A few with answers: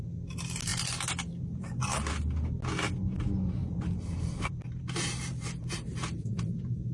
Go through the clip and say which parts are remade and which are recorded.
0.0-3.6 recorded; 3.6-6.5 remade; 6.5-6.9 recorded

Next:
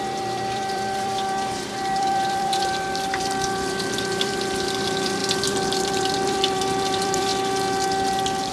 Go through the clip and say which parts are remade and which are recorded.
0.0-7.3 remade; 7.3-8.5 recorded

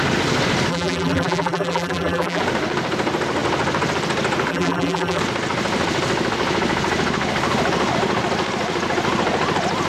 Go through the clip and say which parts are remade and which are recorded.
0.0-0.7 recorded; 0.7-2.4 remade; 2.4-4.5 recorded; 4.5-5.2 remade; 5.2-9.9 recorded

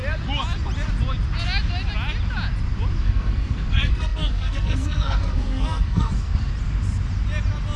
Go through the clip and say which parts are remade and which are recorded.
0.0-3.0 recorded; 3.0-6.5 remade; 6.5-7.8 recorded

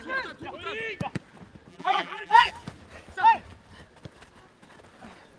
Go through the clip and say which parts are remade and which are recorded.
0.0-1.7 recorded; 1.7-2.5 remade; 2.5-5.4 recorded

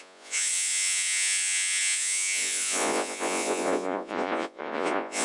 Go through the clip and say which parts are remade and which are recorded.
0.0-5.2 remade

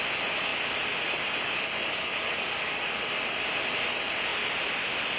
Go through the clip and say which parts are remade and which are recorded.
0.0-0.5 recorded; 0.5-3.6 remade; 3.6-4.3 recorded; 4.3-5.2 remade

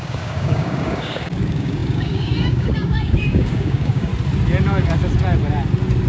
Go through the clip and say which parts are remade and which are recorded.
0.0-4.1 remade; 4.1-6.1 recorded